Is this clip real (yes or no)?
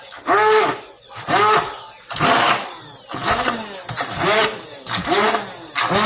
yes